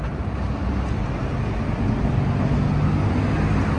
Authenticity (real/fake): real